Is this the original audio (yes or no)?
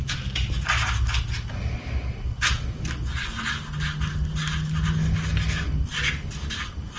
yes